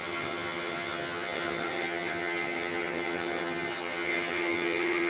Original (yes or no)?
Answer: no